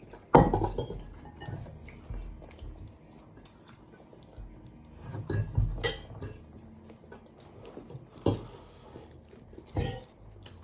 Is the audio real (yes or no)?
yes